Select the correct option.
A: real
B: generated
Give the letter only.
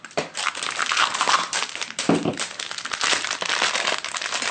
A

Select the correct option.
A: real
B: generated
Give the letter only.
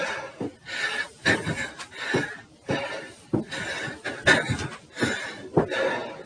A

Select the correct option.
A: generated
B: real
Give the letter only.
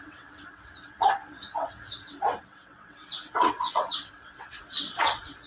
A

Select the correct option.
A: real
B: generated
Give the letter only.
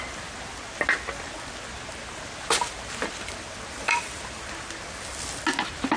A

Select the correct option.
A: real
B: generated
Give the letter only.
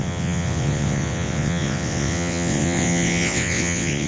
B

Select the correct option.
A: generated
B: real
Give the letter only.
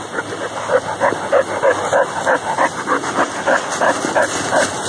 B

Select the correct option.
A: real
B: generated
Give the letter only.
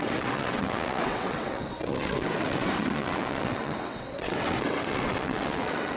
B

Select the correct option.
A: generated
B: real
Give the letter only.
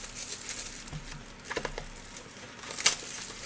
B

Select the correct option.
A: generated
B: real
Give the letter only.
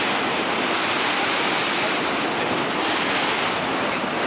B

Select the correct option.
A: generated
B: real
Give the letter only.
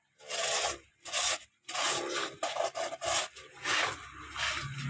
B